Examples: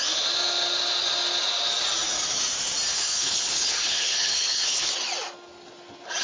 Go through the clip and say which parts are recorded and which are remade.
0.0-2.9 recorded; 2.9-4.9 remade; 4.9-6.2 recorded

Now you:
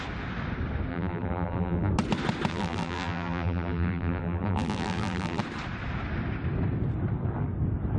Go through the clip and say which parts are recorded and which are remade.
0.0-0.9 recorded; 0.9-1.9 remade; 1.9-2.5 recorded; 2.5-5.4 remade; 5.4-8.0 recorded

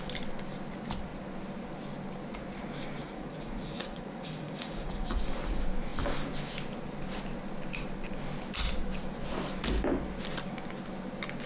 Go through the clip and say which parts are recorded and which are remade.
0.0-3.0 recorded; 3.0-5.2 remade; 5.2-11.5 recorded

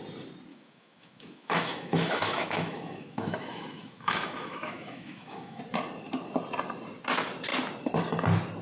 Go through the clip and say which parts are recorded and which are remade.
0.0-0.5 recorded; 0.5-5.6 remade; 5.6-8.6 recorded

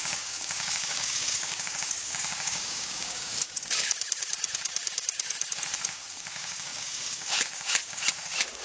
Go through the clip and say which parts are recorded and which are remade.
0.0-8.6 remade

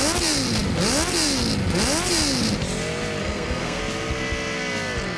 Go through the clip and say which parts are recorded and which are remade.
0.0-3.2 recorded; 3.2-3.8 remade; 3.8-5.2 recorded